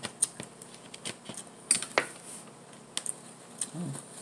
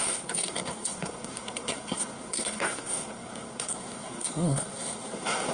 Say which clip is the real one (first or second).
first